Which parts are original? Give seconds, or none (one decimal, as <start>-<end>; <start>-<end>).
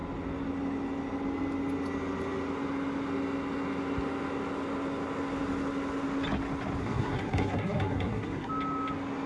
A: 0.0-6.8; 8.5-9.3